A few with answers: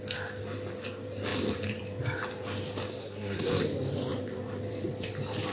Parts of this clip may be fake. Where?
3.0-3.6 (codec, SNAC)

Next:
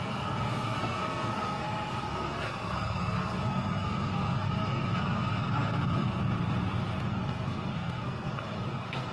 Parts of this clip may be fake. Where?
0.0-6.2 (codec, SNAC); 7.1-9.1

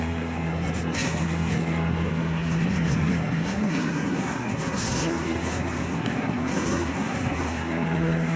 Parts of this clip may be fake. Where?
0.0-8.4 (codec, SNAC)

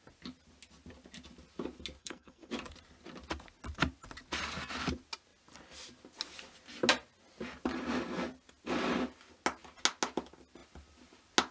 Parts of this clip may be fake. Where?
2.0-2.5 (codec, SNAC)

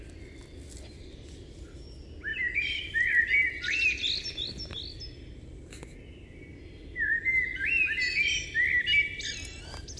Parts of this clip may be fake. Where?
2.3-4.5 (vocoder, BigVGAN v2)